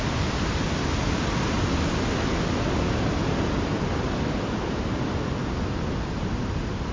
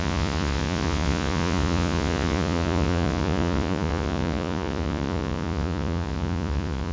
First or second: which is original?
first